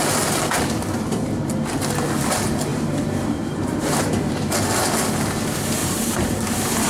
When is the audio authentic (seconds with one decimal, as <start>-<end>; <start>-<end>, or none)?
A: 0.0-2.7; 4.3-5.8